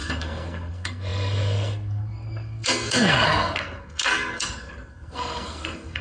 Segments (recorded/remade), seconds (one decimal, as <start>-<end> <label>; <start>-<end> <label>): 0.0-6.0 remade